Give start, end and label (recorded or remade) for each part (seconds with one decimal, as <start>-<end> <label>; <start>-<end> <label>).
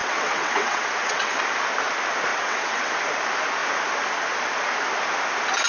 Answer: 0.0-1.4 remade; 1.4-2.3 recorded; 2.3-2.9 remade; 2.9-5.7 recorded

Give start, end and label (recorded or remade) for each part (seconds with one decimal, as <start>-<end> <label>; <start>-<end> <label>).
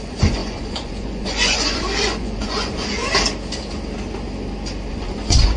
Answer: 0.0-3.0 remade; 3.0-4.9 recorded; 4.9-5.6 remade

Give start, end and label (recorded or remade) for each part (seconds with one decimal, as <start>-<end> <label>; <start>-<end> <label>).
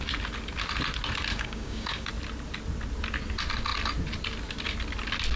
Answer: 0.0-1.3 recorded; 1.3-2.1 remade; 2.1-5.4 recorded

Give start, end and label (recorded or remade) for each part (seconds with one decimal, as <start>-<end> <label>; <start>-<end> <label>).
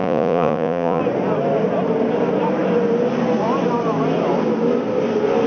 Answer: 0.0-1.0 remade; 1.0-5.5 recorded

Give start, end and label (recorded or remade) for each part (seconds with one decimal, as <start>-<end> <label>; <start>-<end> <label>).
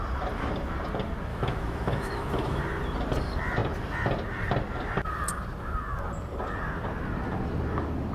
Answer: 0.0-1.3 recorded; 1.3-2.6 remade; 2.6-8.1 recorded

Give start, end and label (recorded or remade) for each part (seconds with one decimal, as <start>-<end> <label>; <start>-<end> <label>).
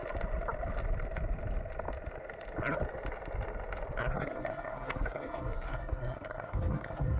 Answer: 0.0-4.0 recorded; 4.0-7.2 remade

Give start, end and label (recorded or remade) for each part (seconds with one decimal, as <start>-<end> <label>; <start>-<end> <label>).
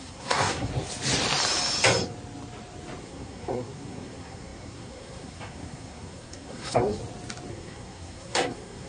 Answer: 0.0-0.7 remade; 0.7-3.0 recorded; 3.0-7.0 remade; 7.0-7.5 recorded; 7.5-8.9 remade